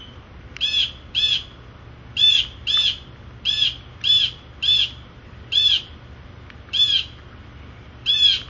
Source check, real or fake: real